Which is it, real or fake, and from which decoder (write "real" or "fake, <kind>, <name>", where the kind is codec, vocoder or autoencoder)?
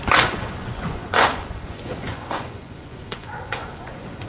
fake, vocoder, Vocos